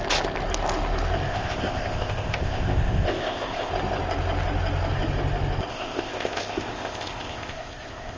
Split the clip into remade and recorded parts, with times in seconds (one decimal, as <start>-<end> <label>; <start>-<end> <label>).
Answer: 0.0-1.3 recorded; 1.3-3.7 remade; 3.7-5.7 recorded; 5.7-8.2 remade